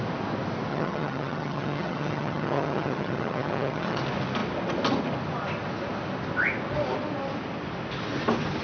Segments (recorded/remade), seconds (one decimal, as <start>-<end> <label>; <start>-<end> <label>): 0.0-0.7 recorded; 0.7-4.0 remade; 4.0-8.6 recorded